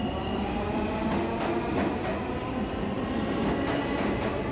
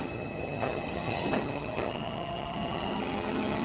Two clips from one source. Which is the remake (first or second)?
second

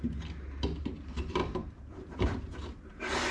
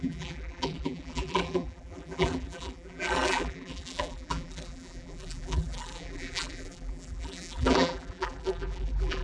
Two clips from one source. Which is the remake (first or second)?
second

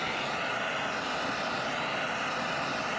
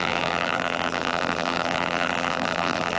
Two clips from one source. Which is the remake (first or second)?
second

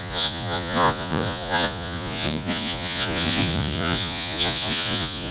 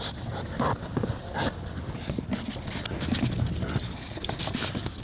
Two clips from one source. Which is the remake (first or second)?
first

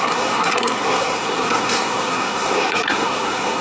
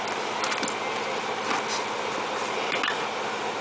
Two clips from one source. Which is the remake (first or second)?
first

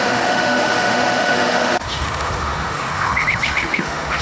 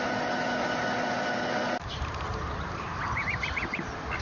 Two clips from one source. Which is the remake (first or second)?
first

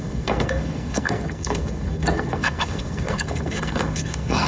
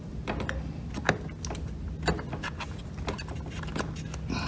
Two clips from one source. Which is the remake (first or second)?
first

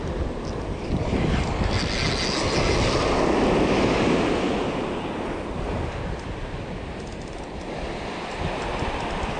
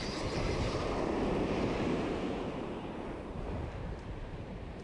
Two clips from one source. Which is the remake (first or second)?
second